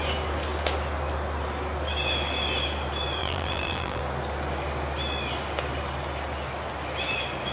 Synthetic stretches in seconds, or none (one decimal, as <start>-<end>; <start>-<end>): 3.2-4.0